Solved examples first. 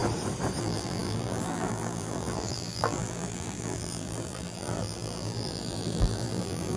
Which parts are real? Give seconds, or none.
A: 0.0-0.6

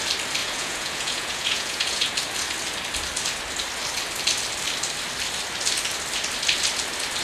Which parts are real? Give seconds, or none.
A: 0.0-0.4; 2.1-7.2

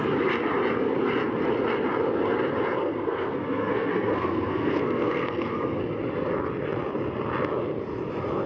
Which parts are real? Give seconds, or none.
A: 0.0-2.8; 5.8-8.5

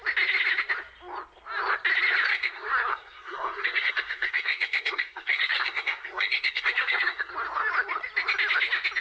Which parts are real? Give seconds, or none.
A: 0.0-2.3; 7.3-9.0

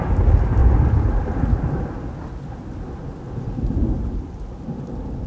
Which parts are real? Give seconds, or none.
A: 0.0-0.6; 1.8-3.8